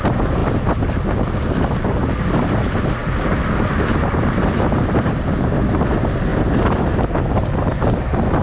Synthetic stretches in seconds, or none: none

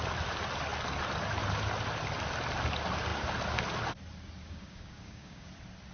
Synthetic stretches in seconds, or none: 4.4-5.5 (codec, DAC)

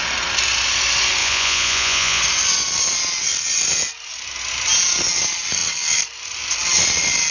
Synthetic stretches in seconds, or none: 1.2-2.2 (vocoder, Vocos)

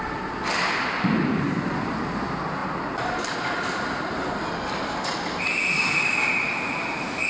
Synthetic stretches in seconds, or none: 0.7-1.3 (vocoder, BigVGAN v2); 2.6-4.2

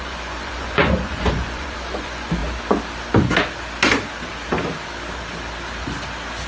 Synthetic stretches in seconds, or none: 0.0-2.4 (vocoder, Vocos)